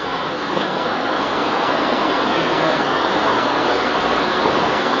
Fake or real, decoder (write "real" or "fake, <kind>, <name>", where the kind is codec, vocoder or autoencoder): fake, codec, SNAC